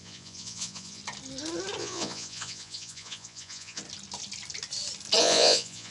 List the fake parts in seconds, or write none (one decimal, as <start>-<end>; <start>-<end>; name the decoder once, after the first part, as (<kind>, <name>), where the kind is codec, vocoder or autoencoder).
0.0-1.0 (vocoder, Vocos); 1.8-3.8; 5.2-5.9